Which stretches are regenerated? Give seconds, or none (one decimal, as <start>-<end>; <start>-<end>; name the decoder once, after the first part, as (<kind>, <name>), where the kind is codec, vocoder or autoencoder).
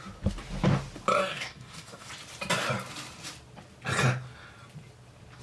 1.2-2.1 (codec, DAC)